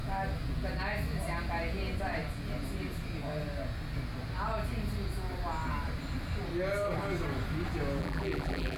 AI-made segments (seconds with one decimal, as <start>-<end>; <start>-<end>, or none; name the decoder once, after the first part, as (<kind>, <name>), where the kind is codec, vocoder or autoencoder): 8.0-8.8 (vocoder, BigVGAN v2)